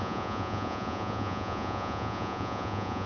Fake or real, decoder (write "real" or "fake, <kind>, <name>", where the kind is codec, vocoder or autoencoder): fake, vocoder, Vocos